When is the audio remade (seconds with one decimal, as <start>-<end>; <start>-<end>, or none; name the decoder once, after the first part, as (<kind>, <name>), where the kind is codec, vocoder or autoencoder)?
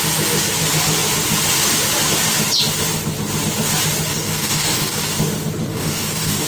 4.1-5.1 (codec, DAC); 5.7-6.5